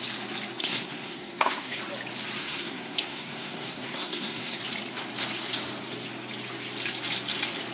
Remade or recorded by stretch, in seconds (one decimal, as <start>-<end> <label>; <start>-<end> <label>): 0.0-0.6 recorded; 0.6-1.8 remade; 1.8-2.4 recorded; 2.4-4.6 remade; 4.6-7.7 recorded